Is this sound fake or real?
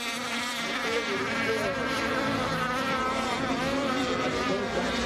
real